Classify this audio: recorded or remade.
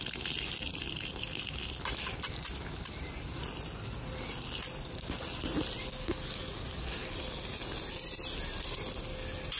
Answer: recorded